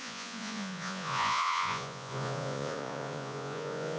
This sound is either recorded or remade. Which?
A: remade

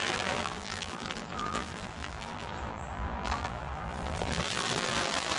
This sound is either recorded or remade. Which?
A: remade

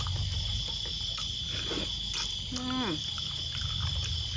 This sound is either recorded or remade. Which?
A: recorded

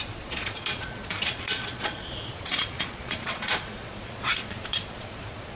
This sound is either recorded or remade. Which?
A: remade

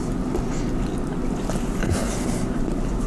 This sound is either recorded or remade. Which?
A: recorded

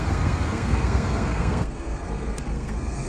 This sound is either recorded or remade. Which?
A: remade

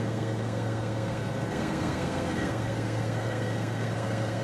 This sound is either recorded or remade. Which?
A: remade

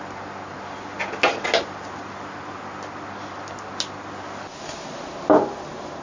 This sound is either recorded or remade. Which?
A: recorded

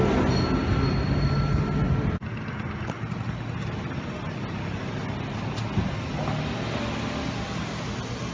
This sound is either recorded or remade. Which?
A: recorded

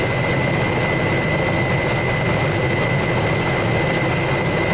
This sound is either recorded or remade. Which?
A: recorded